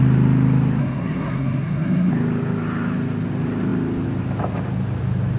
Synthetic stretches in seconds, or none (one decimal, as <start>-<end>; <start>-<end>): 0.8-2.1